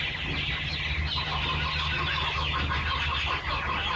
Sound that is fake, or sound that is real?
real